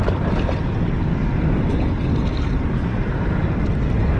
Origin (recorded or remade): recorded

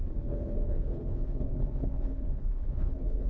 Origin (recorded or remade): remade